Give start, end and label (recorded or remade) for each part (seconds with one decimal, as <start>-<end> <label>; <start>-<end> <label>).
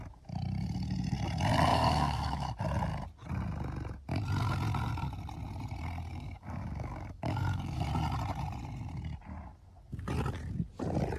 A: 0.0-1.7 recorded; 1.7-2.6 remade; 2.6-6.1 recorded; 6.1-7.8 remade; 7.8-11.2 recorded